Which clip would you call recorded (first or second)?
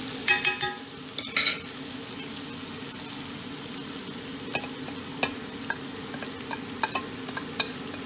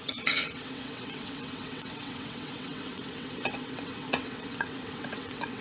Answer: first